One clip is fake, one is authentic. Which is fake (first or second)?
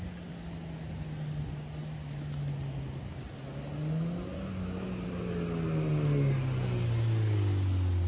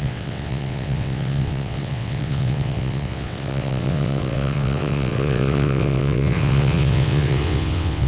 second